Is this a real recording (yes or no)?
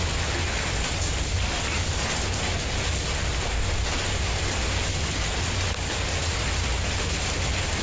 yes